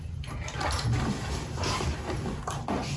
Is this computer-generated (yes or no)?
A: no